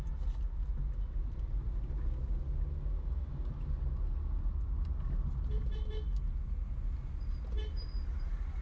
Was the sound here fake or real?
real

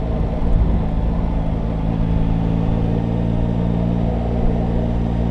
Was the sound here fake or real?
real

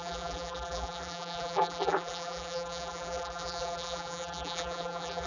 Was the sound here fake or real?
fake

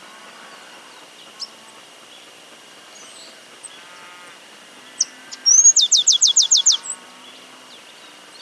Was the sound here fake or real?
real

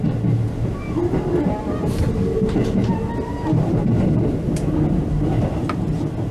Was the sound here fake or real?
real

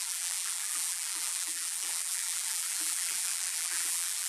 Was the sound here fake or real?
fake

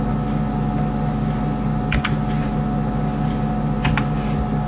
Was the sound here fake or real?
real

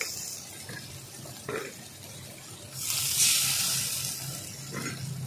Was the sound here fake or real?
real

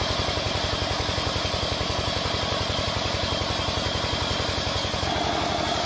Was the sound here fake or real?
real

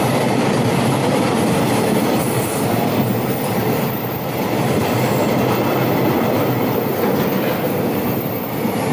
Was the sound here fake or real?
real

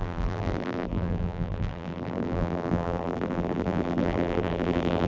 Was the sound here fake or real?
fake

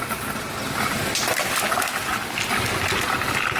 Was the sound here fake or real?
real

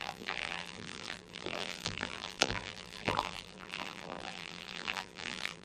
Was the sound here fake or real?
fake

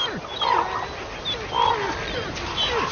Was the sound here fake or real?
real